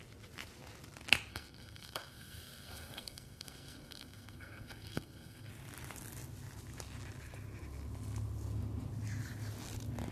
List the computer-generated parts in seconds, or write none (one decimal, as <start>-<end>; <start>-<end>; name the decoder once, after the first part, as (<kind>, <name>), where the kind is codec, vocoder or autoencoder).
1.3-5.5 (codec, SNAC)